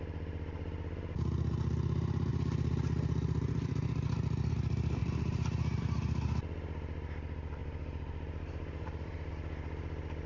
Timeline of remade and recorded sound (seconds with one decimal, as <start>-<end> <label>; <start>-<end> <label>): 0.0-2.3 recorded; 2.3-4.5 remade; 4.5-5.0 recorded; 5.0-5.8 remade; 5.8-7.6 recorded; 7.6-9.3 remade; 9.3-10.3 recorded